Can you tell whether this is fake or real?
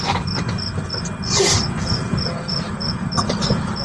real